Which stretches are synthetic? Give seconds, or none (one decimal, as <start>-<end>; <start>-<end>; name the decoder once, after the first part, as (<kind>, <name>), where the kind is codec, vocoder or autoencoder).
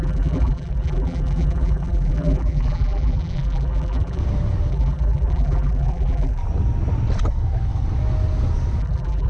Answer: 0.0-4.2 (vocoder, BigVGAN v2); 4.7-6.4; 8.8-9.3